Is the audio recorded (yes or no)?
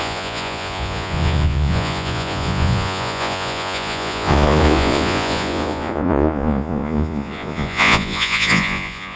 no